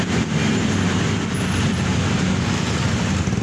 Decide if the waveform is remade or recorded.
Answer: recorded